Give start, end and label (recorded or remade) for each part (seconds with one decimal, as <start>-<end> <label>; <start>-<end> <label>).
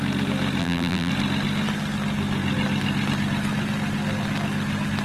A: 0.0-0.6 recorded; 0.6-1.1 remade; 1.1-5.0 recorded